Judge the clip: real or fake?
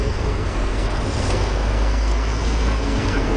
fake